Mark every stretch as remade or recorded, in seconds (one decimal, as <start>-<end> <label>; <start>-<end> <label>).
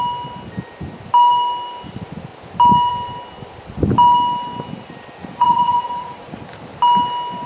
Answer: 0.0-5.2 recorded; 5.2-6.4 remade; 6.4-7.5 recorded